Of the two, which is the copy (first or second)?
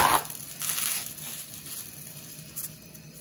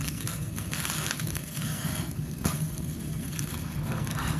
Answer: second